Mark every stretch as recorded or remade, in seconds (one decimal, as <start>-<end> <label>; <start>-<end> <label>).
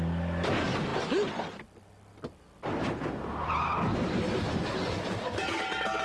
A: 0.0-6.0 recorded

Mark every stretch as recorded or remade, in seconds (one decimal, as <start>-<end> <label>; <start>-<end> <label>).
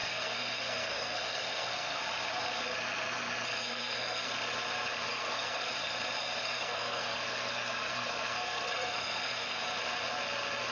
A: 0.0-2.0 remade; 2.0-3.5 recorded; 3.5-4.3 remade; 4.3-5.1 recorded; 5.1-5.7 remade; 5.7-6.4 recorded; 6.4-9.6 remade; 9.6-10.7 recorded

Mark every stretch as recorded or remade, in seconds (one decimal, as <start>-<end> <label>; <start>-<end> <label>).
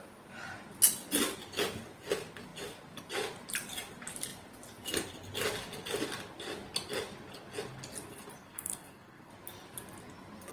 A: 0.0-8.4 recorded; 8.4-9.3 remade; 9.3-10.5 recorded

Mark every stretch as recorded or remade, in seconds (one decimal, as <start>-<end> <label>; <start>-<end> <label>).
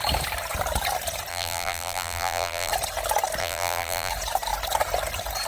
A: 0.0-1.3 recorded; 1.3-2.7 remade; 2.7-3.4 recorded; 3.4-4.1 remade; 4.1-5.5 recorded